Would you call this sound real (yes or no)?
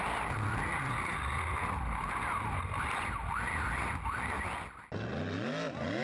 yes